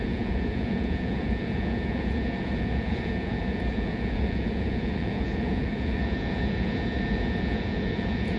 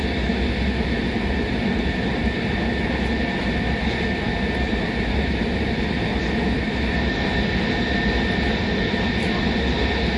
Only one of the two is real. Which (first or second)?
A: second